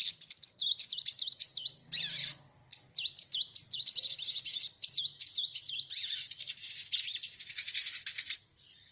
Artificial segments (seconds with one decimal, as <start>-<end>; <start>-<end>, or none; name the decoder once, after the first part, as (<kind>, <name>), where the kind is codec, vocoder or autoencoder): none